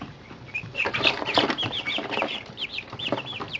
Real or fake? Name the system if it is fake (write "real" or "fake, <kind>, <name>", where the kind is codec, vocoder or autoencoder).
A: fake, vocoder, BigVGAN v2